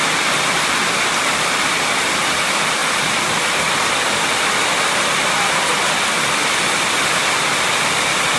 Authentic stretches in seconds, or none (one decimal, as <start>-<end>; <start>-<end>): 0.0-8.4